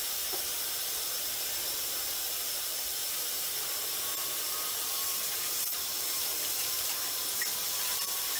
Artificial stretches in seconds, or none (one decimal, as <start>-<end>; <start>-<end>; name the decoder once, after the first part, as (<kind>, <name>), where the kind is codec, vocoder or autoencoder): 2.3-3.0 (vocoder, BigVGAN v2); 4.6-8.4